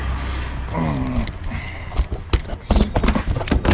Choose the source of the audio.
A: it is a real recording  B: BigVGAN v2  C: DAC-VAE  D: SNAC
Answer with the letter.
A